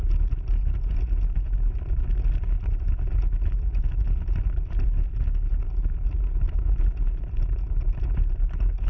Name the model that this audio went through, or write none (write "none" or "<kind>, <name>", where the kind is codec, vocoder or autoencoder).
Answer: none